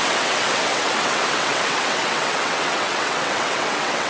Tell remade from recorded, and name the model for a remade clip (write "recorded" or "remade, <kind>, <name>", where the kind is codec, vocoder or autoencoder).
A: remade, vocoder, WaveNeXt